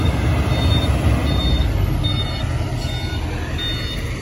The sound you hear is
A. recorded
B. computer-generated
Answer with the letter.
A